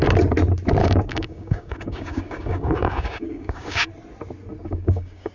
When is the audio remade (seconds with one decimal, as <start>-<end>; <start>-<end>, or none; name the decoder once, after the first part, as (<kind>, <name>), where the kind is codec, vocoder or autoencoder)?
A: 0.8-3.9 (codec, DAC); 4.6-5.3